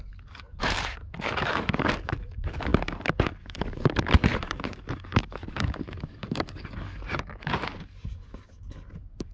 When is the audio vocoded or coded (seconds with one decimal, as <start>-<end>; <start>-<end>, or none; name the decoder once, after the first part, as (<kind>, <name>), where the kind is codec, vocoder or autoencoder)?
0.0-9.3 (codec, DAC)